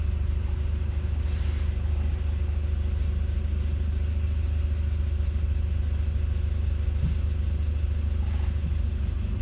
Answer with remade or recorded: recorded